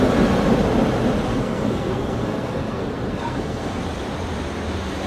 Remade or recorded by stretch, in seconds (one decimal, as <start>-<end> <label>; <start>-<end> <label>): 0.0-1.3 recorded; 1.3-3.8 remade; 3.8-5.1 recorded